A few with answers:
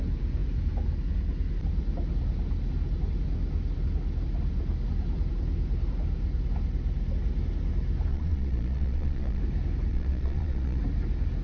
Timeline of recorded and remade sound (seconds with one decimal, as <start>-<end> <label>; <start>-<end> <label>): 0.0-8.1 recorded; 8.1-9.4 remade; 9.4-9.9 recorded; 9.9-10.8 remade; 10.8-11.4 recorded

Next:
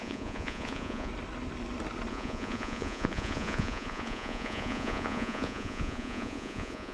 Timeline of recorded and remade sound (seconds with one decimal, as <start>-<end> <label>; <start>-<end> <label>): 0.0-1.1 remade; 1.1-2.1 recorded; 2.1-6.9 remade

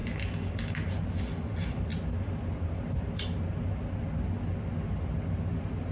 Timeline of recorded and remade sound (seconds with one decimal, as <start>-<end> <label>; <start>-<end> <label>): 0.0-5.9 recorded

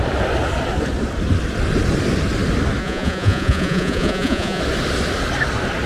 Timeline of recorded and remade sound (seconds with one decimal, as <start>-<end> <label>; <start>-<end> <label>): 0.0-2.8 recorded; 2.8-4.6 remade; 4.6-5.9 recorded